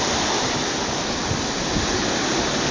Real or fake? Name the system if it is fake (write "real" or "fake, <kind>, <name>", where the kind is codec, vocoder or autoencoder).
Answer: real